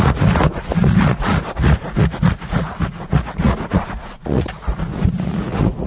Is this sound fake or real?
fake